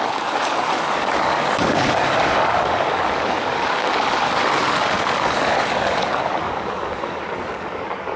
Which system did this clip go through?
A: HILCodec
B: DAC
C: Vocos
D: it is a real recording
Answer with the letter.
B